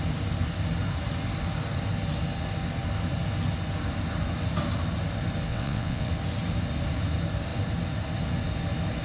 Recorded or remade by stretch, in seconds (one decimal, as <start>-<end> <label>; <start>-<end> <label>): 0.0-5.5 recorded; 5.5-6.1 remade; 6.1-9.0 recorded